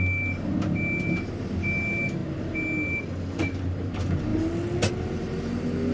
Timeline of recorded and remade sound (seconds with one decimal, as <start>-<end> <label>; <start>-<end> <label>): 0.0-5.9 recorded